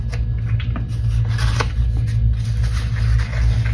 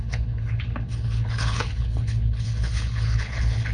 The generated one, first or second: second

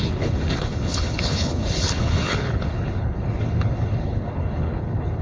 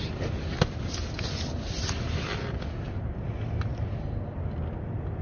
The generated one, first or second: first